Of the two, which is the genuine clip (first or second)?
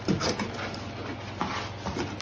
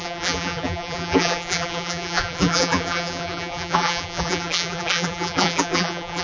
first